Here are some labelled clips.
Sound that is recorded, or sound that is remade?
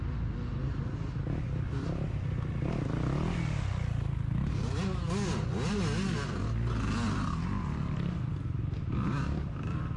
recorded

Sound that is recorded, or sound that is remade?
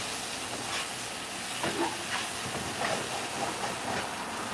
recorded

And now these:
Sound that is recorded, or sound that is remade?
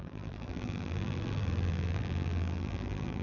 remade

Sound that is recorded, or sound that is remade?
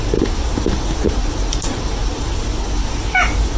recorded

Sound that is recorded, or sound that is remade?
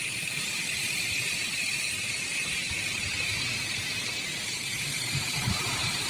remade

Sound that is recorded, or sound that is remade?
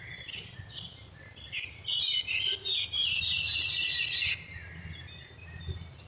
recorded